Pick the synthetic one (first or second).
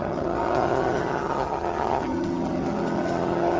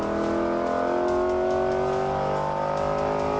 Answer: first